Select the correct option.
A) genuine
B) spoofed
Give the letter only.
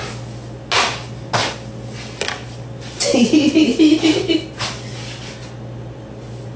A